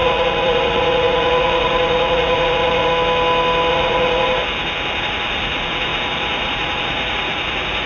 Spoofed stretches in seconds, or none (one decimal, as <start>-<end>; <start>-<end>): 0.0-2.9; 3.7-4.4; 5.0-7.9